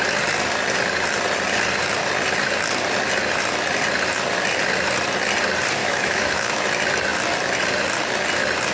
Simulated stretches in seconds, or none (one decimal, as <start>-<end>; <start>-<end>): 5.8-6.6

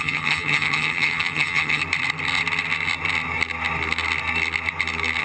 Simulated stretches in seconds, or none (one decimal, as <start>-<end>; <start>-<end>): 0.0-1.8

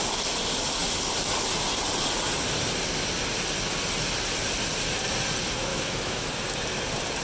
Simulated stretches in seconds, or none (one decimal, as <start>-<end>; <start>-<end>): 5.7-6.3

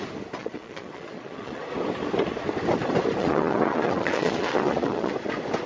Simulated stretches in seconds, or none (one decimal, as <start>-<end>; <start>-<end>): 0.4-1.6; 3.2-5.1

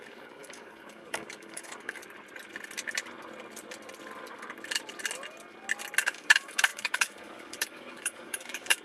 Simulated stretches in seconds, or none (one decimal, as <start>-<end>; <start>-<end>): 0.0-2.0; 6.0-8.8

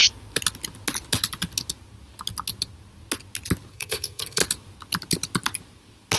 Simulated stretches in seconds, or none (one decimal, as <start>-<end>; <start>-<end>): 3.7-4.4

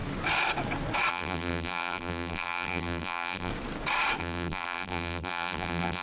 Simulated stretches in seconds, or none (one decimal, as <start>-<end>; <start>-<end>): 1.1-3.5; 4.2-6.0